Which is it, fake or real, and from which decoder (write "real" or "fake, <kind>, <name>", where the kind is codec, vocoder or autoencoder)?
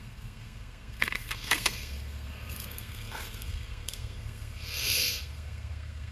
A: fake, codec, SNAC